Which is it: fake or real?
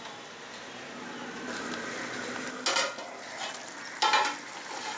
real